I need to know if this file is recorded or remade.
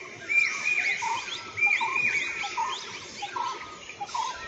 recorded